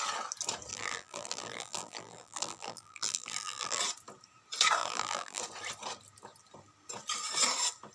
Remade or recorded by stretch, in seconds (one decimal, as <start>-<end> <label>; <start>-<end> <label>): 0.0-0.7 recorded; 0.7-3.8 remade; 3.8-4.8 recorded; 4.8-5.4 remade; 5.4-7.9 recorded

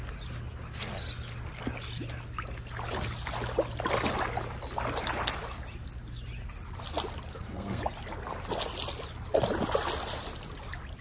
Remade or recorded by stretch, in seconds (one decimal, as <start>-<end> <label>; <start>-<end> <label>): 0.0-7.3 recorded; 7.3-7.8 remade; 7.8-11.0 recorded

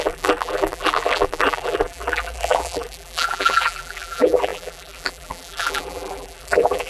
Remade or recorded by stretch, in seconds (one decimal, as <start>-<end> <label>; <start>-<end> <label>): 0.0-6.9 remade

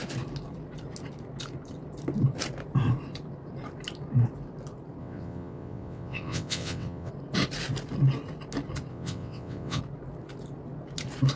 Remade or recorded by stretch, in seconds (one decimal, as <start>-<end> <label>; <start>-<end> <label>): 0.0-5.0 recorded; 5.0-7.1 remade; 7.1-8.9 recorded; 8.9-9.8 remade; 9.8-11.4 recorded

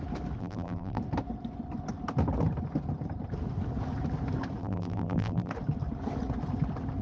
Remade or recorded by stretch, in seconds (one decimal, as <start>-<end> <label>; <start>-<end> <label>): 0.0-0.4 recorded; 0.4-1.0 remade; 1.0-4.6 recorded; 4.6-5.5 remade; 5.5-7.0 recorded

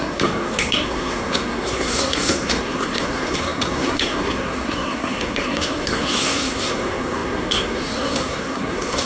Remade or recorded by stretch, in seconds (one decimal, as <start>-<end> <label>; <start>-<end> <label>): 0.0-9.1 remade

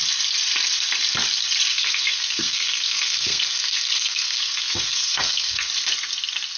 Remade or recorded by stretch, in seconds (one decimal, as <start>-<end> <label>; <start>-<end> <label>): 0.0-1.7 recorded; 1.7-5.7 remade; 5.7-6.6 recorded